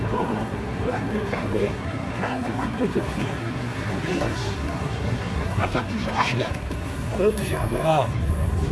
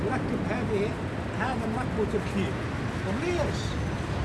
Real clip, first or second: second